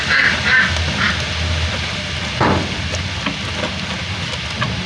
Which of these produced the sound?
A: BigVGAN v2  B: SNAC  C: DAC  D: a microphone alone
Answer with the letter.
D